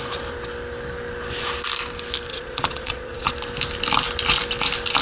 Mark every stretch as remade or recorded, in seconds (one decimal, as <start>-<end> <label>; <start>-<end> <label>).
0.0-2.3 recorded; 2.3-3.3 remade; 3.3-5.0 recorded